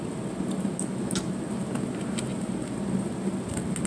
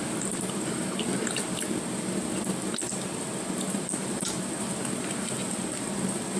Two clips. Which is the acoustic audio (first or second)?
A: first